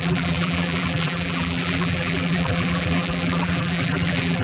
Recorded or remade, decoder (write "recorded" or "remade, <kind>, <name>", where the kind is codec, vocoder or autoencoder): remade, vocoder, BigVGAN v2